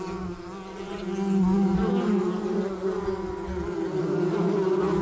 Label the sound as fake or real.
real